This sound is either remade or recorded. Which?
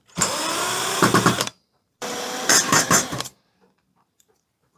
remade